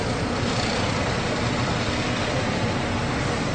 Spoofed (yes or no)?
no